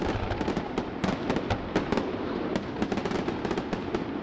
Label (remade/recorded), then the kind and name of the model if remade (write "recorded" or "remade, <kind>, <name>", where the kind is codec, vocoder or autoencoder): recorded